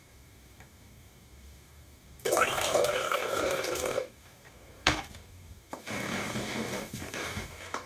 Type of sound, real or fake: fake